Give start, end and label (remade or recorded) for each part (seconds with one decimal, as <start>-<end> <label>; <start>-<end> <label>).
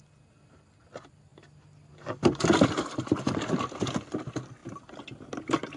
0.0-1.3 recorded; 1.3-3.2 remade; 3.2-5.8 recorded